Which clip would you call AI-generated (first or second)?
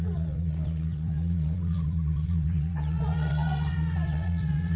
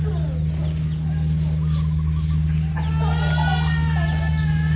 first